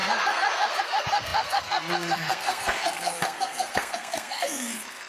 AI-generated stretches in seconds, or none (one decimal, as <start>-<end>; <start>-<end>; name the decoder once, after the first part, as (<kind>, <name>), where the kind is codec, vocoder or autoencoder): 0.0-5.1 (codec, SNAC)